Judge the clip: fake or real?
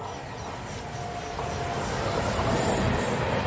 real